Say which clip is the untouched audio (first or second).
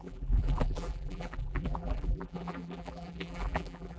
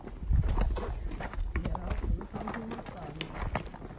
second